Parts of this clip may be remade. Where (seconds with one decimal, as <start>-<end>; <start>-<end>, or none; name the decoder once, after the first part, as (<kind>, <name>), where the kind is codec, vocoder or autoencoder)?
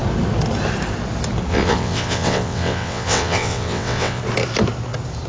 1.5-4.2 (vocoder, WaveNeXt)